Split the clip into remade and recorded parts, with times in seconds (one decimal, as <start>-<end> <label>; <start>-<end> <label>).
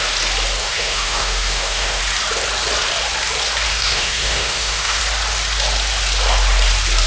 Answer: 0.0-0.6 recorded; 0.6-2.0 remade; 2.0-3.7 recorded; 3.7-5.0 remade; 5.0-7.1 recorded